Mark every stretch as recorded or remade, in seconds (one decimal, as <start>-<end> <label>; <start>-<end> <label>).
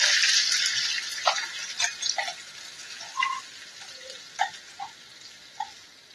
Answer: 0.0-1.9 remade; 1.9-3.5 recorded; 3.5-6.1 remade